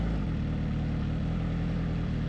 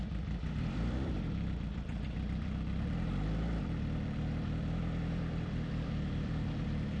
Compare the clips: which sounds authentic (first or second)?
first